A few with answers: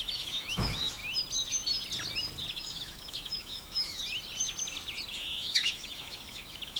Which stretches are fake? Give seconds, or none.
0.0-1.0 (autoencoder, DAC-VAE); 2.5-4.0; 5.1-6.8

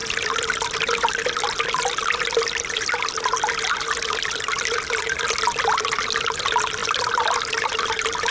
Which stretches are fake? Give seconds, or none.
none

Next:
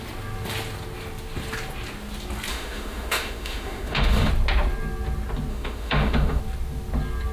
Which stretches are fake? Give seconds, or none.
2.5-4.3 (autoencoder, DAC-VAE); 5.5-6.4